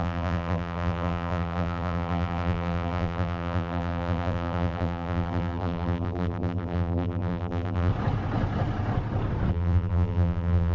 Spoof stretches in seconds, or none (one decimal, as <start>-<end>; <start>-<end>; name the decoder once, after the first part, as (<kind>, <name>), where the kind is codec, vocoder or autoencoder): 0.0-7.9 (vocoder, BigVGAN v2); 9.5-10.7